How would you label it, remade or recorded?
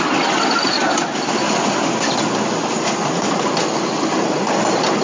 recorded